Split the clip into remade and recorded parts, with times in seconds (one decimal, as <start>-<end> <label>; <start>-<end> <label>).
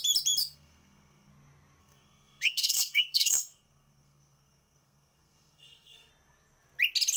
0.0-0.4 recorded; 0.4-1.3 remade; 1.3-1.8 recorded; 1.8-6.1 remade; 6.1-7.2 recorded